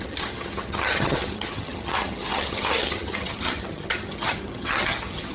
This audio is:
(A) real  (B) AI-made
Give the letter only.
B